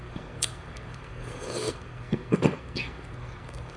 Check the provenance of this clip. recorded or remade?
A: remade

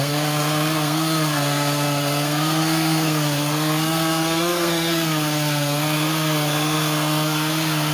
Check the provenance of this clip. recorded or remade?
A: remade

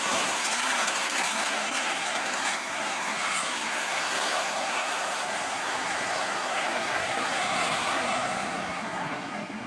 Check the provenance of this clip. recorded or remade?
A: remade